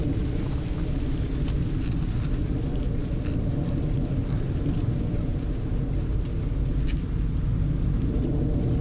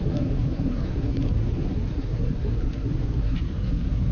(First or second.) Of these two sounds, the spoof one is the second